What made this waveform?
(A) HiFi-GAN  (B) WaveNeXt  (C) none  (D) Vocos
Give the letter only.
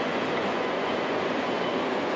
D